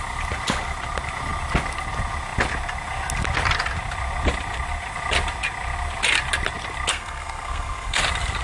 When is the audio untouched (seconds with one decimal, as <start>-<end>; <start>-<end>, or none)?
0.0-6.9; 8.0-8.4